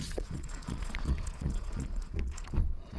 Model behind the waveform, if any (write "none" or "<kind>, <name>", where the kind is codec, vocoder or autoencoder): vocoder, Vocos